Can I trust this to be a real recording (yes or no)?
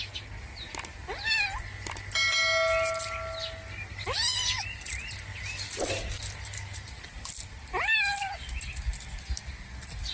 yes